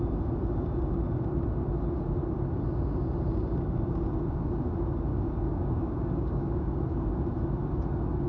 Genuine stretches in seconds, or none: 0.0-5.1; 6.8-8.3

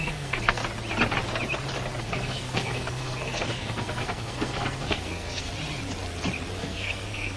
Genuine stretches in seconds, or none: 0.6-2.0; 5.5-6.6

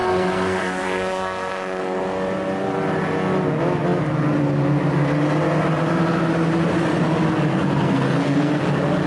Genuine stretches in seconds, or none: 2.0-7.5; 8.6-9.1

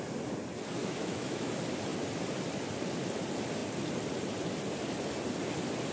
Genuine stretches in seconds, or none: 0.0-0.8; 1.5-5.9

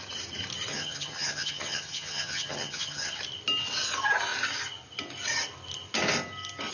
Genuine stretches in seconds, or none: 0.0-0.7; 3.2-6.7